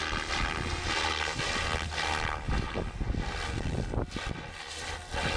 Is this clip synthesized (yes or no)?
no